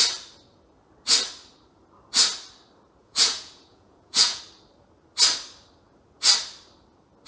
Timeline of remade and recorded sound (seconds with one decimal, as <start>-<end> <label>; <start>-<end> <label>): 0.0-3.0 recorded; 3.0-4.4 remade; 4.4-7.3 recorded